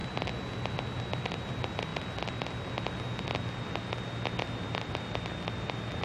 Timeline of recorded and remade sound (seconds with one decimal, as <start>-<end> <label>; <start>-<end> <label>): 0.0-6.0 recorded